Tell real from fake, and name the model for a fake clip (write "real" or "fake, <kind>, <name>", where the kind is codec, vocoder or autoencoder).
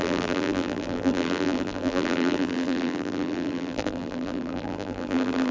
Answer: fake, vocoder, BigVGAN v2